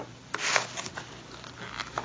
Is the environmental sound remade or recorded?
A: recorded